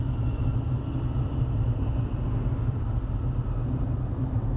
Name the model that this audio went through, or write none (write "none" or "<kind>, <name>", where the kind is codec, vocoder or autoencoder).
none